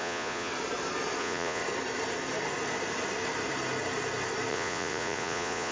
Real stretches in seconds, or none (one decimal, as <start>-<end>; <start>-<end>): 0.5-1.2; 1.6-4.5